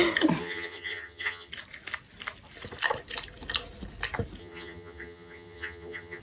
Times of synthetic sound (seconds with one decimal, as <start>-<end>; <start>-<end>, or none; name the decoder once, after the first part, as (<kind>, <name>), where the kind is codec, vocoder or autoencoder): 0.4-1.5 (vocoder, HiFi-GAN); 4.4-6.2